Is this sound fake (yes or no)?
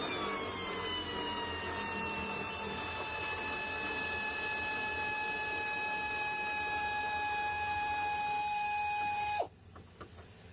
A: no